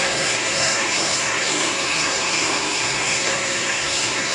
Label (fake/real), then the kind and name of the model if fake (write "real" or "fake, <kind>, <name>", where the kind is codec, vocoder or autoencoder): fake, codec, SNAC